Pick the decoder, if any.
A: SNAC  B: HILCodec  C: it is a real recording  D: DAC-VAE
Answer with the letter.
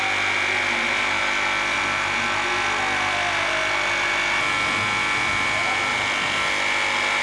C